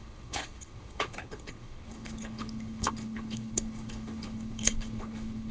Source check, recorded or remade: remade